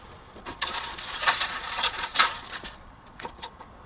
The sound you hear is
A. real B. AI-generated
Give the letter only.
B